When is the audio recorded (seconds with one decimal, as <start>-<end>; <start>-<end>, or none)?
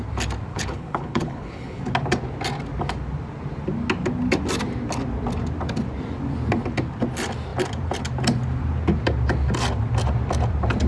0.0-0.5; 1.8-10.9